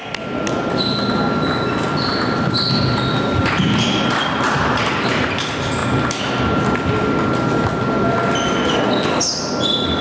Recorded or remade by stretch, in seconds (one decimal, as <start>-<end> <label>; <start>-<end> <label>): 0.0-10.0 recorded